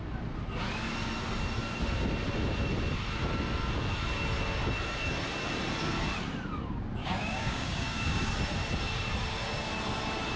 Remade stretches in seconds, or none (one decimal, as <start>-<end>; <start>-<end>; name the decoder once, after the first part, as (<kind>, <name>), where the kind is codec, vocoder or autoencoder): 7.0-8.3 (codec, DAC)